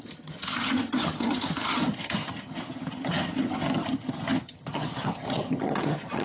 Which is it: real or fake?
fake